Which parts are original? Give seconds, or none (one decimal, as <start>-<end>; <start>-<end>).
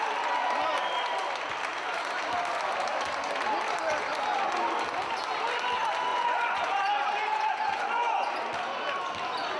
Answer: 0.0-6.1; 8.3-9.6